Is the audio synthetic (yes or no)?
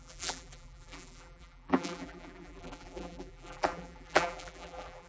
yes